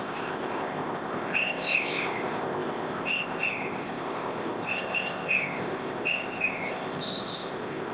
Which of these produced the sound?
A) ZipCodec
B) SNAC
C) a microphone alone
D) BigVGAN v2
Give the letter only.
A